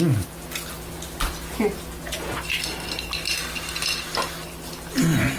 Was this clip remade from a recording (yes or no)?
no